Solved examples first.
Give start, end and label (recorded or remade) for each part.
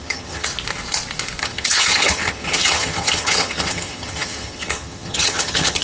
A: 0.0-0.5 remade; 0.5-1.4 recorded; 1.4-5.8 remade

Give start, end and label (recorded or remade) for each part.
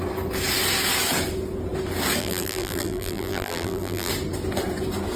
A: 0.0-2.2 recorded; 2.2-4.1 remade; 4.1-5.2 recorded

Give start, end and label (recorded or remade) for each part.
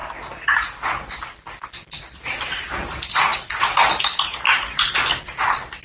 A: 0.0-5.8 recorded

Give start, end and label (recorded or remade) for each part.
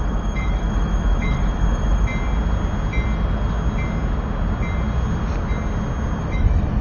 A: 0.0-2.1 remade; 2.1-6.2 recorded; 6.2-6.8 remade